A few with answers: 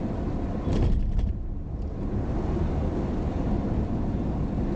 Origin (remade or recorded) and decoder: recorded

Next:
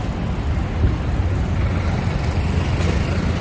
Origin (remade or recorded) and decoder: recorded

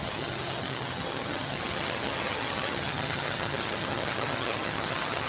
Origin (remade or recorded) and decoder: remade, vocoder, HiFi-GAN